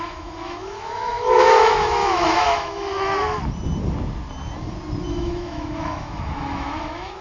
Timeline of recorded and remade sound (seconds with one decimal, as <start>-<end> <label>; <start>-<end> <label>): 0.0-2.9 remade; 2.9-5.1 recorded; 5.1-7.2 remade